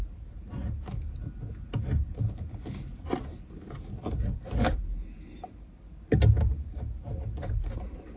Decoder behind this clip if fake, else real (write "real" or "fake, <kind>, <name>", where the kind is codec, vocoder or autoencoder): real